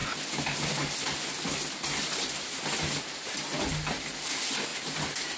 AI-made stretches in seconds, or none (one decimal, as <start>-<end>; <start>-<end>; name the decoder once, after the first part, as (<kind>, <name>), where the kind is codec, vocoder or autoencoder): 4.7-5.4 (vocoder, BigVGAN v2)